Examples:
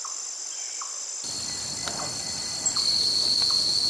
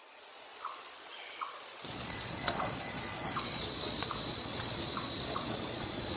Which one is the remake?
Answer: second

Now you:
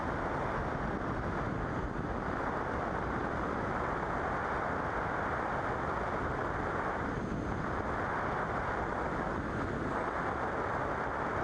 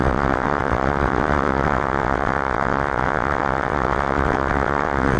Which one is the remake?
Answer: second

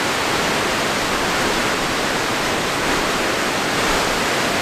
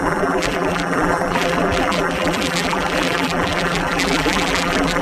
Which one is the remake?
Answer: second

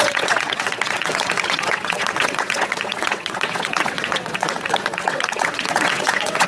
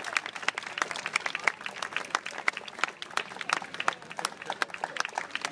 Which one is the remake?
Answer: first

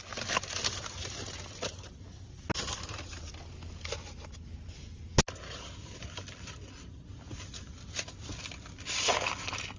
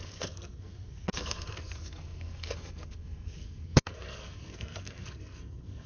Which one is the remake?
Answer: second